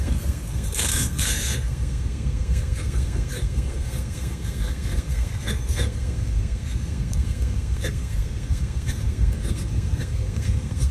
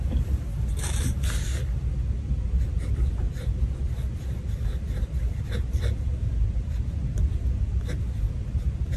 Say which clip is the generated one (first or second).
first